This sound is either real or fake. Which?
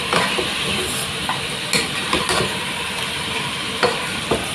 real